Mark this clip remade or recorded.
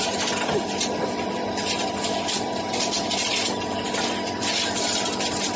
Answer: recorded